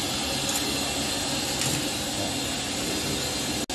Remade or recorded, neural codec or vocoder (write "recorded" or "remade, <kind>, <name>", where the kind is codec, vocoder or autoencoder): recorded